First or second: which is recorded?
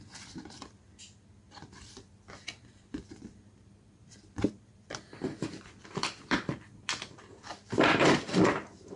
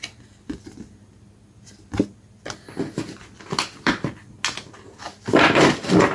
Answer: second